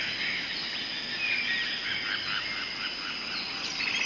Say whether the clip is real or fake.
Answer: real